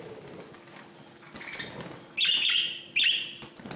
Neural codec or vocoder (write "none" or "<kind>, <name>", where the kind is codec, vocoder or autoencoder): none